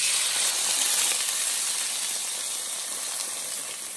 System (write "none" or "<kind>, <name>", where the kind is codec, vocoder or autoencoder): none